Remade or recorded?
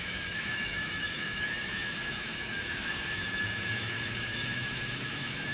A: remade